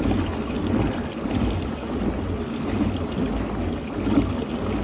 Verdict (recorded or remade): recorded